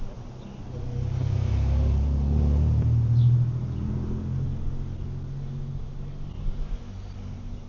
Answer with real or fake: real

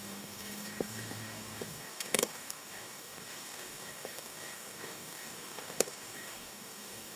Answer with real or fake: fake